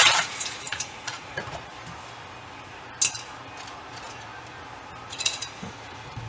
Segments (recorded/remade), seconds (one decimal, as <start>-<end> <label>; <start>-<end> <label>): 0.0-1.7 remade; 1.7-3.9 recorded; 3.9-4.3 remade; 4.3-5.1 recorded; 5.1-6.3 remade